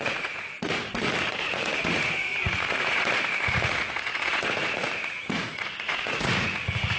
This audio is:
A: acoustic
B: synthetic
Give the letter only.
B